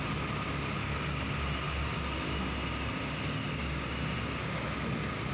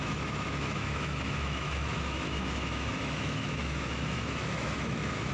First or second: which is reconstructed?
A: second